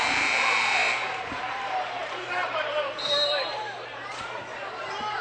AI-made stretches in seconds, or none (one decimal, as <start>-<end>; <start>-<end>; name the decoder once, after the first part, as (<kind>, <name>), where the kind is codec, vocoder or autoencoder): 0.0-0.8 (vocoder, BigVGAN v2); 1.3-5.2